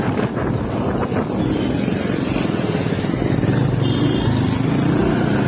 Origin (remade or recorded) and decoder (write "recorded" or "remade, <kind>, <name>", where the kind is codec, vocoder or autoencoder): recorded